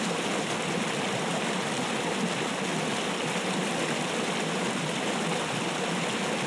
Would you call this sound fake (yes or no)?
no